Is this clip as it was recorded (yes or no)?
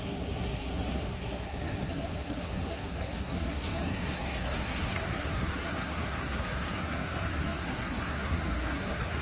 no